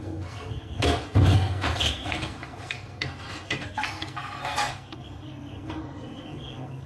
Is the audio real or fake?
fake